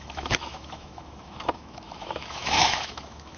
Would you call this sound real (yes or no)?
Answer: no